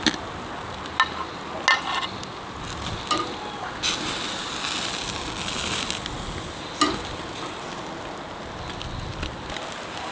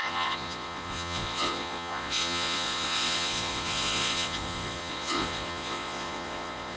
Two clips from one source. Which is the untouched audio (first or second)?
first